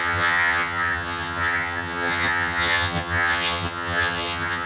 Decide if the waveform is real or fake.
fake